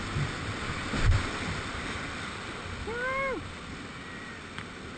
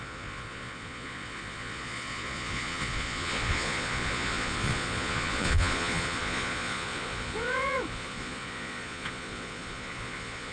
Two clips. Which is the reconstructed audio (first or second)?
second